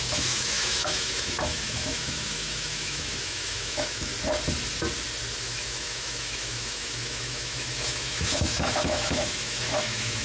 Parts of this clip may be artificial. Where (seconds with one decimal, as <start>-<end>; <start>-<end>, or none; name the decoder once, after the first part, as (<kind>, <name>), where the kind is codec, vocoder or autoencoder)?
0.0-4.1 (autoencoder, DAC-VAE); 5.4-10.2